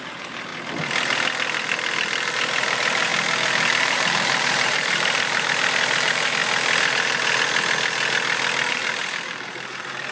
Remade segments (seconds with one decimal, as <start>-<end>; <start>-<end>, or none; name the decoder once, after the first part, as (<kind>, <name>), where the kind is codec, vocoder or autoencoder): 0.0-0.5 (vocoder, BigVGAN v2); 2.3-3.1; 3.8-6.4; 8.7-10.1